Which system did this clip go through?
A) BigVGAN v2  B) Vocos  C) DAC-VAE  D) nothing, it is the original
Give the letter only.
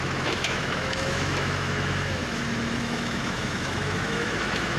C